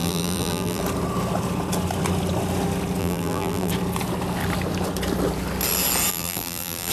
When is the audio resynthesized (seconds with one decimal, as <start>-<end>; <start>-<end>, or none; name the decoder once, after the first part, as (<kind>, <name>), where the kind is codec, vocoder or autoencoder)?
0.0-0.8 (vocoder, BigVGAN v2); 3.0-3.7; 6.1-6.9